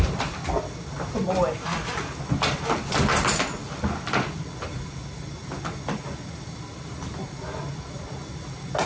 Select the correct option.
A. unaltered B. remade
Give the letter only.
A